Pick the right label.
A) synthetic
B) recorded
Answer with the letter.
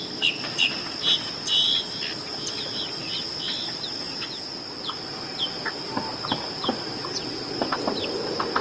B